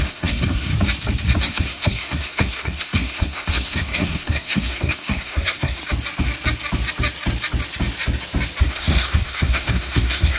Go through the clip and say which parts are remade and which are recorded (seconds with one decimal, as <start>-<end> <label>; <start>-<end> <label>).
0.0-0.7 remade; 0.7-1.4 recorded; 1.4-5.8 remade; 5.8-8.6 recorded; 8.6-10.4 remade